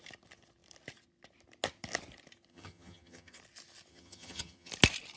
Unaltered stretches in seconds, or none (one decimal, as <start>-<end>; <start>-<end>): 0.0-2.5; 3.4-3.9; 4.7-5.2